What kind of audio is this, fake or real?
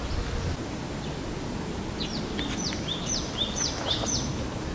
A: real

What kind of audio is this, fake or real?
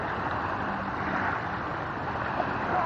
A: real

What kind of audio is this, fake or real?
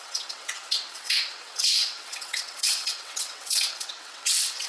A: fake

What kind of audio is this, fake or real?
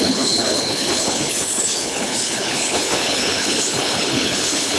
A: fake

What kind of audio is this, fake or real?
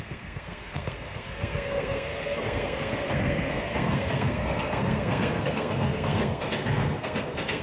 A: fake